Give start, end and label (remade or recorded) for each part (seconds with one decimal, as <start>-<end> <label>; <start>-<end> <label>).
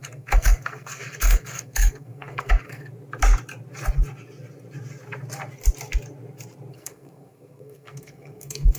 0.0-2.9 remade; 2.9-6.7 recorded; 6.7-8.8 remade